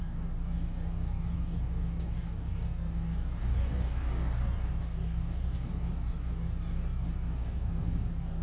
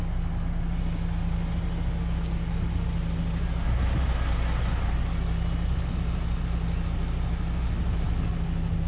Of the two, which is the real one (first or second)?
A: second